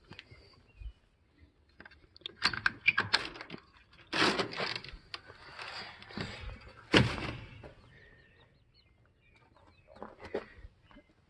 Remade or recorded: recorded